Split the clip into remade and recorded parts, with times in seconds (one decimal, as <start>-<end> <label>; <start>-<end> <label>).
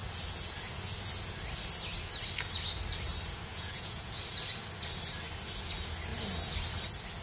0.0-3.5 recorded; 3.5-4.2 remade; 4.2-7.2 recorded